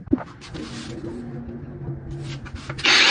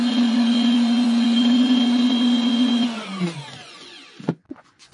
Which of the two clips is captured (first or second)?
first